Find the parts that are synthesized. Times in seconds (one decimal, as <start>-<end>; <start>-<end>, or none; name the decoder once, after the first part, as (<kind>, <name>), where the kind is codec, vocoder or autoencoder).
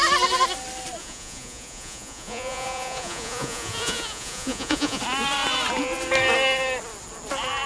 1.0-5.0 (vocoder, Vocos)